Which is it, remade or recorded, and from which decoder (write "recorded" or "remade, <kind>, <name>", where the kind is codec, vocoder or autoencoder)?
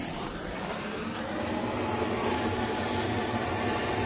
recorded